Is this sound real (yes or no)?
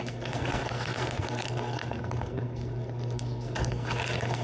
no